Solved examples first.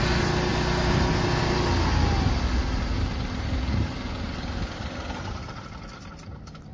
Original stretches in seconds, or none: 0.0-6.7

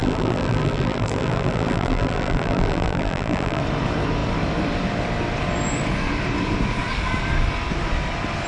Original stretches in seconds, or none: 3.6-8.5